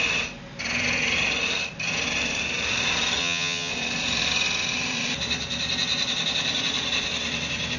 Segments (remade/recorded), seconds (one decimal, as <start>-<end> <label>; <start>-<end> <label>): 0.0-3.2 recorded; 3.2-3.7 remade; 3.7-7.8 recorded